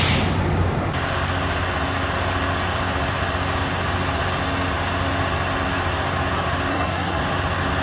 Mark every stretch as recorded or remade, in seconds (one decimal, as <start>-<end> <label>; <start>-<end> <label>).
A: 0.0-6.7 recorded; 6.7-7.2 remade; 7.2-7.8 recorded